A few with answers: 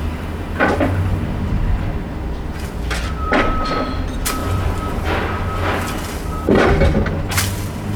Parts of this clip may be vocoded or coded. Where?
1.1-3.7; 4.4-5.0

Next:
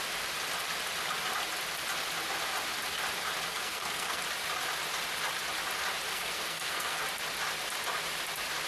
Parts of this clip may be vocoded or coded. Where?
3.5-4.2; 6.1-7.0

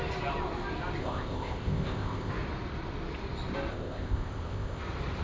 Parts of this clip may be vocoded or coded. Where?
1.0-2.3; 3.7-4.8

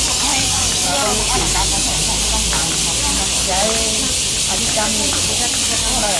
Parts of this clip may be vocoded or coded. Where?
0.0-1.9; 5.6-6.2

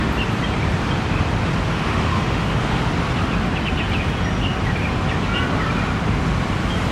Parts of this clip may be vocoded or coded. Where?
1.7-2.8

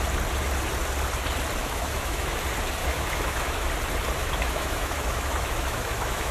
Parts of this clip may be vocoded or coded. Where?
1.6-2.4; 2.8-3.7; 4.2-6.3